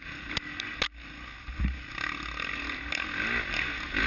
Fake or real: real